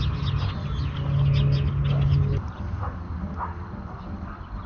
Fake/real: real